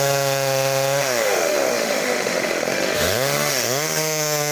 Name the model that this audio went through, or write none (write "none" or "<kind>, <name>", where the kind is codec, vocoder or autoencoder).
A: autoencoder, DAC-VAE